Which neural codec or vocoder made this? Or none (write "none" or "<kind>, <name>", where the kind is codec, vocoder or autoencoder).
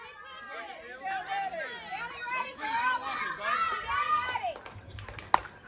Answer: none